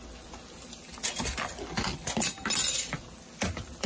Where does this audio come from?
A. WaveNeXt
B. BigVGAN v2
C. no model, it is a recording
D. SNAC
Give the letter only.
C